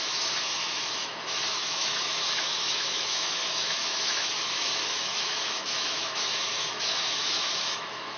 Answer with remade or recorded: remade